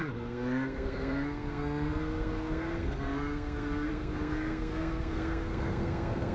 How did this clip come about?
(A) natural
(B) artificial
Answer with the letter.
B